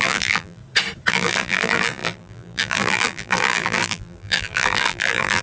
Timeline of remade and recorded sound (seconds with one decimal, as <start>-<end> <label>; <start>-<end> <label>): 0.0-0.6 remade; 0.6-1.1 recorded; 1.1-5.4 remade